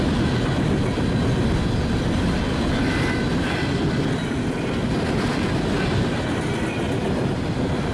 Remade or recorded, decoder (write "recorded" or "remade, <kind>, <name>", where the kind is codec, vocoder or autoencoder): recorded